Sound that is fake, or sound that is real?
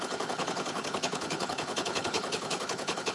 fake